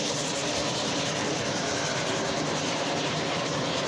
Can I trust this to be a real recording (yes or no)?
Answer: no